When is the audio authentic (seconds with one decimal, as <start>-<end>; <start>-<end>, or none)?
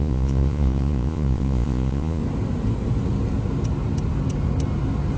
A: 2.2-5.2